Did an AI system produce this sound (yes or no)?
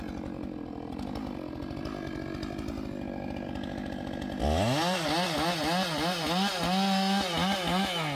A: no